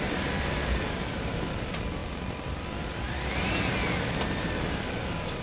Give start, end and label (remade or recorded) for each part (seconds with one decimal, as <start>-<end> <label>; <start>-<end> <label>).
0.0-5.4 recorded